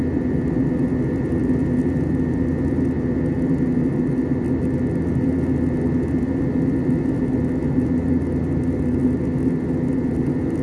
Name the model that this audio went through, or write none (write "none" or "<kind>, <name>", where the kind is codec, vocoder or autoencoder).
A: none